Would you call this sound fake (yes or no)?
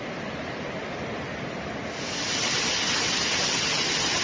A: no